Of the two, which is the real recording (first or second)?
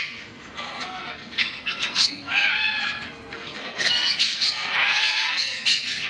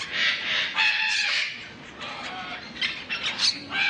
second